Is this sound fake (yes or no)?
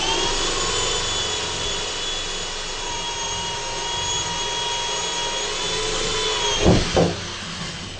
no